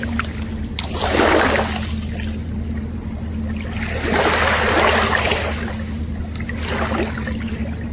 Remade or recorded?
recorded